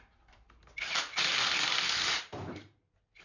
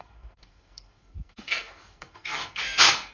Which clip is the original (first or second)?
first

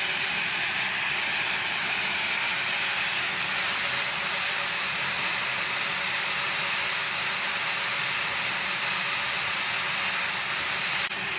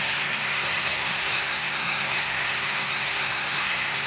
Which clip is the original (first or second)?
first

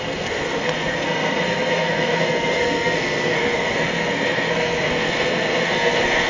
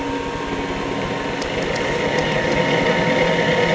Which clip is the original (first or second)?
second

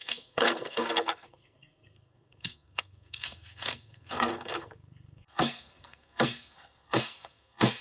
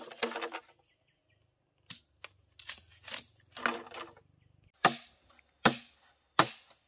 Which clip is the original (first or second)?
second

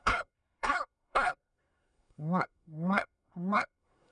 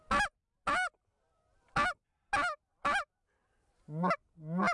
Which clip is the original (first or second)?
second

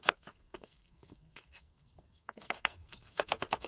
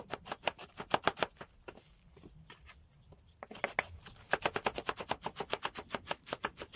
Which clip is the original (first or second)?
second